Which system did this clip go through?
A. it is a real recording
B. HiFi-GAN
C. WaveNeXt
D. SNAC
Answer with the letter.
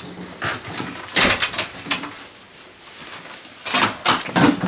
A